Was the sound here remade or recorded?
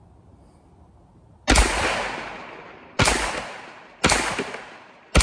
recorded